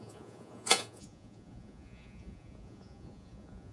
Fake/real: fake